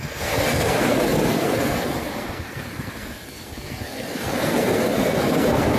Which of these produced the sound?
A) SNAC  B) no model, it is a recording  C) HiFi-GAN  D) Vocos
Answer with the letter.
A